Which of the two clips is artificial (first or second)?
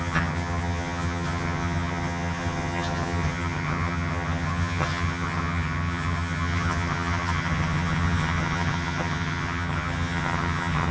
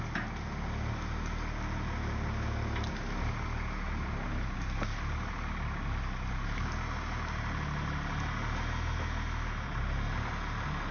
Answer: first